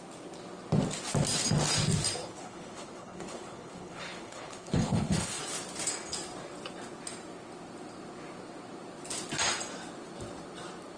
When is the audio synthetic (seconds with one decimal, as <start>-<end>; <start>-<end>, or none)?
2.2-5.4